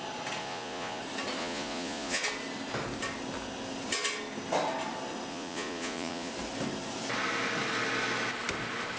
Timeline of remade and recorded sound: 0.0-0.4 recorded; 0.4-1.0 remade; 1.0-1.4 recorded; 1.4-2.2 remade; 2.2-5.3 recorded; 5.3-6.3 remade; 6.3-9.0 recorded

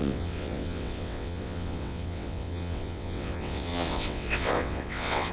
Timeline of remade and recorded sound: 0.0-5.3 remade

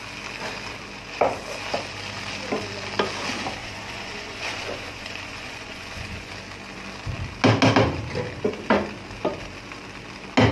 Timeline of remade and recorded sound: 0.0-3.6 recorded; 3.6-6.3 remade; 6.3-10.5 recorded

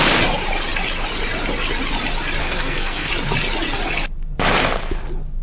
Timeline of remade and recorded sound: 0.0-2.4 recorded; 2.4-3.1 remade; 3.1-5.4 recorded

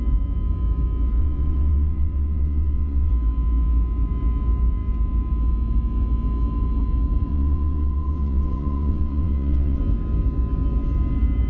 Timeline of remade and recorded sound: 0.0-1.2 recorded; 1.2-3.1 remade; 3.1-7.3 recorded; 7.3-9.8 remade; 9.8-11.5 recorded